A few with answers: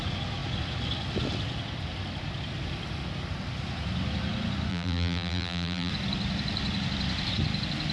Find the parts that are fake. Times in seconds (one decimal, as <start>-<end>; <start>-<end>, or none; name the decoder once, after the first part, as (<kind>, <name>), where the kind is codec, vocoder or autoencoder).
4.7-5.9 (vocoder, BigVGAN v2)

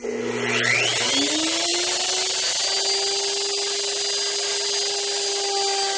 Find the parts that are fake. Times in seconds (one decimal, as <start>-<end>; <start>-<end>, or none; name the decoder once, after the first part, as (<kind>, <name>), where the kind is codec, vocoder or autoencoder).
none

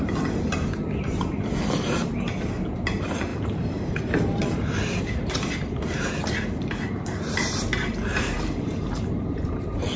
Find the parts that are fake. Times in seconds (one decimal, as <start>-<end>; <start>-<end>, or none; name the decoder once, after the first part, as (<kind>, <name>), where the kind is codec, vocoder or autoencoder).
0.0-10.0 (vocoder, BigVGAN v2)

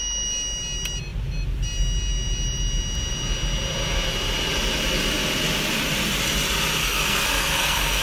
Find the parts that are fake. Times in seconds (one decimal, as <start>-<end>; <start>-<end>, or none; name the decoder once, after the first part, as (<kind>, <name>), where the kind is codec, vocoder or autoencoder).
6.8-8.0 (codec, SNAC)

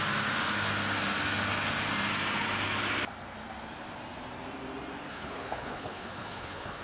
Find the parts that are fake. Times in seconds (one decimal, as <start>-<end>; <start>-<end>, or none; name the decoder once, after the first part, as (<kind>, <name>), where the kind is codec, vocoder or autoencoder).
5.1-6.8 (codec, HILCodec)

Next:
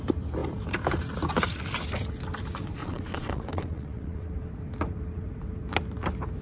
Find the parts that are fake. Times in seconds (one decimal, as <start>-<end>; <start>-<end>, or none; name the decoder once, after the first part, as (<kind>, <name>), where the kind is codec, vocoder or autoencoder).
2.8-4.3 (vocoder, WaveNeXt)

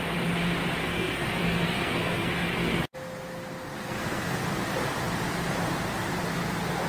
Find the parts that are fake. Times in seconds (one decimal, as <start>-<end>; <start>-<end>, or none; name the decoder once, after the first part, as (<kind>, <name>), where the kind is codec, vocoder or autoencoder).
0.8-2.9 (codec, SNAC); 3.8-4.4

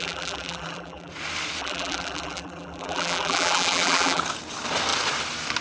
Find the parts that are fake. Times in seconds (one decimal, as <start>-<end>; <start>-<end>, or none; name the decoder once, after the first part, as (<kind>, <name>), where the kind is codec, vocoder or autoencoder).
0.0-1.1 (vocoder, BigVGAN v2); 1.6-4.2